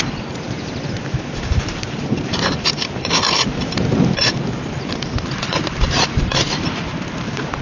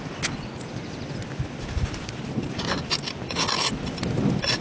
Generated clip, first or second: first